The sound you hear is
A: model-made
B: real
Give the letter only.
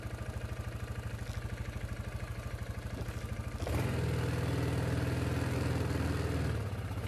B